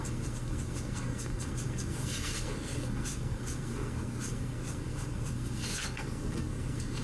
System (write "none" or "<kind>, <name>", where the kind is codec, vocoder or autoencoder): codec, SNAC